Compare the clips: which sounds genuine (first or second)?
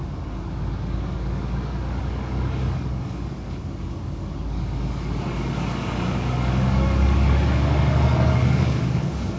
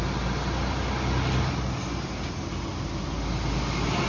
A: second